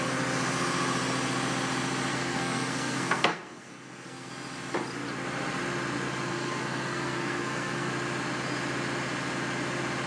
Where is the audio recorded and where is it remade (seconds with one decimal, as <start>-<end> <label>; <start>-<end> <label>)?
0.0-2.1 recorded; 2.1-4.3 remade; 4.3-6.3 recorded; 6.3-7.9 remade; 7.9-10.1 recorded